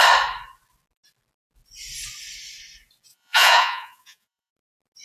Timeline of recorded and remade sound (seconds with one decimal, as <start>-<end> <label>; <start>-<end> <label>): 0.0-3.1 recorded; 3.1-4.5 remade; 4.5-5.0 recorded